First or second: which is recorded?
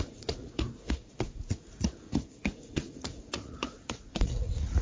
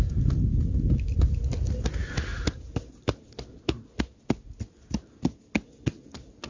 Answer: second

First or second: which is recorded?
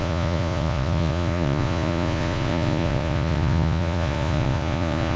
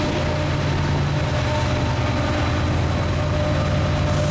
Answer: second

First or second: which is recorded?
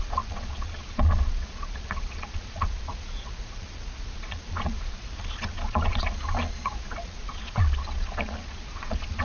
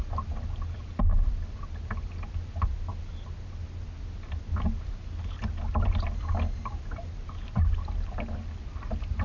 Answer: second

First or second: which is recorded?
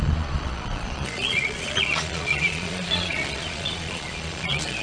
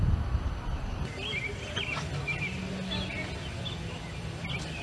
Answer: second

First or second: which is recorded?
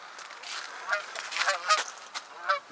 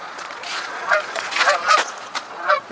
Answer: first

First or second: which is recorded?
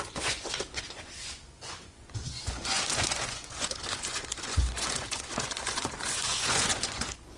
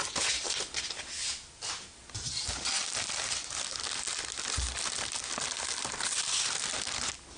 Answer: second